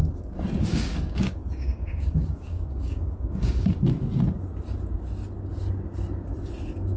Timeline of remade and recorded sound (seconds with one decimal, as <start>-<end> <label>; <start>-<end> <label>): 0.0-0.6 recorded; 0.6-3.7 remade; 3.7-7.0 recorded